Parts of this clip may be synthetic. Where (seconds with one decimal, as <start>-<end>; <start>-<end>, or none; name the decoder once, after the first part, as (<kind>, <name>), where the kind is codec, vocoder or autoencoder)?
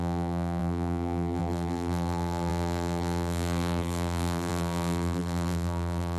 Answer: 0.0-6.2 (vocoder, BigVGAN v2)